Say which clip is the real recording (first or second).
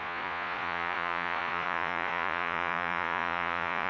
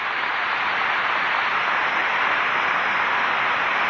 second